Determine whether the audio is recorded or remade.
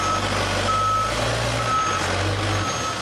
recorded